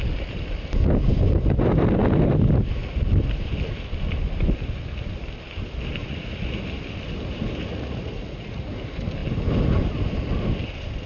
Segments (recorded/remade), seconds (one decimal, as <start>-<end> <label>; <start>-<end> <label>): 0.0-6.0 recorded; 6.0-6.6 remade; 6.6-7.7 recorded; 7.7-8.7 remade; 8.7-11.1 recorded